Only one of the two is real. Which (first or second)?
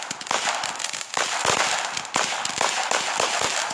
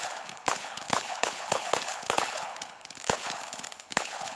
first